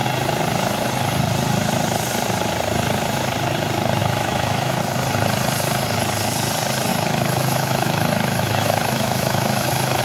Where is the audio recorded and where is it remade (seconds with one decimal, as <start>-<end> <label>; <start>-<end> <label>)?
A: 0.0-4.0 recorded; 4.0-4.8 remade; 4.8-6.9 recorded; 6.9-10.0 remade